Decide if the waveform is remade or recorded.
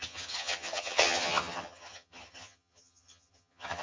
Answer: remade